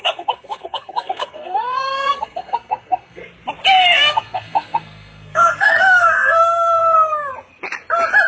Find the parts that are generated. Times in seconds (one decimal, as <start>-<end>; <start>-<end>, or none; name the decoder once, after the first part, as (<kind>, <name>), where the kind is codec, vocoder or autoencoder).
0.0-3.2 (codec, SNAC); 3.8-7.3